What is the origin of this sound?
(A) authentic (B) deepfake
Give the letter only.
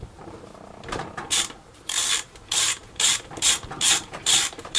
B